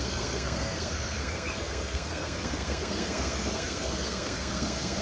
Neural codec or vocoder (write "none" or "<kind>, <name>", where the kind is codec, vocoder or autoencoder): codec, SNAC